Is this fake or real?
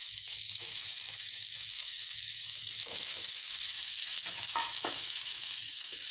fake